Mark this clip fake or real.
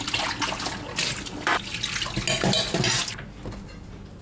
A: real